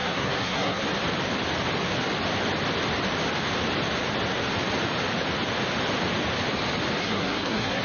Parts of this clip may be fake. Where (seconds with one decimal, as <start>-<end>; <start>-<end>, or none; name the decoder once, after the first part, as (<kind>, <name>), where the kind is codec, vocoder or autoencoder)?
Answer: 0.0-0.8 (codec, SNAC); 7.0-7.8